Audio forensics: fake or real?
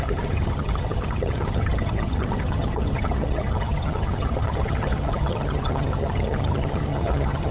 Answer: fake